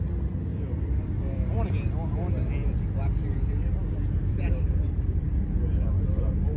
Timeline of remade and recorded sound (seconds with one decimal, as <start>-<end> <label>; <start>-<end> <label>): 0.0-0.5 recorded; 0.5-1.9 remade; 1.9-2.6 recorded; 2.6-5.6 remade; 5.6-6.6 recorded